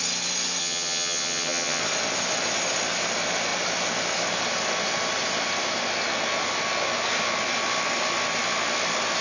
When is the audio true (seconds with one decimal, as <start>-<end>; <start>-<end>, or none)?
0.0-0.6; 1.8-9.2